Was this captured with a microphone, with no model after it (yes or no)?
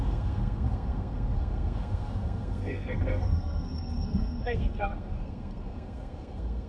no